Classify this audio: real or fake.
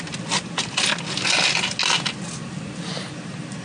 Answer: real